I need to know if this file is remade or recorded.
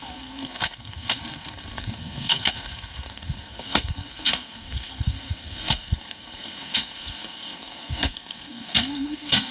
remade